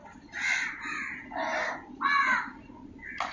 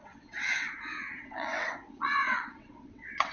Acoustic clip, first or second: first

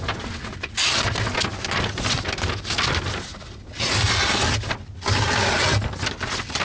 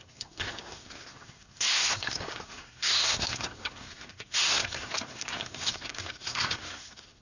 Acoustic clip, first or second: first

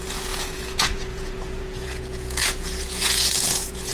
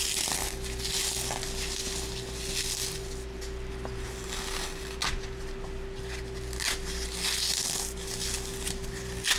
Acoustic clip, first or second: second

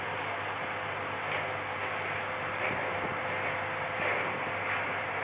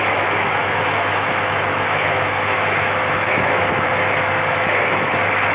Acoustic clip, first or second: first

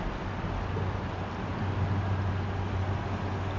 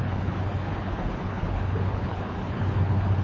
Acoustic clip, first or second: first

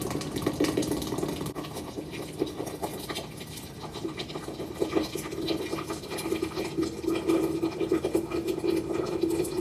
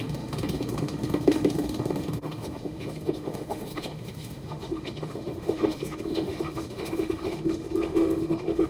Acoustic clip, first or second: first